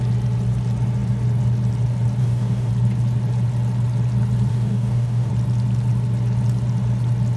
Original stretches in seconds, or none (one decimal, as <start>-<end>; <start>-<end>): 0.0-2.2; 2.7-4.5; 5.3-7.4